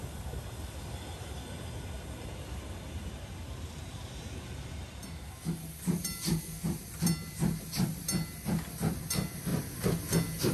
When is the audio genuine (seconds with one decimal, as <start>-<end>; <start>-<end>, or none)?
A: 0.0-10.5